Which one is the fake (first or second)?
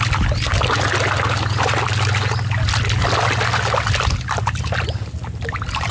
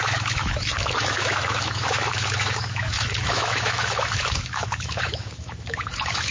second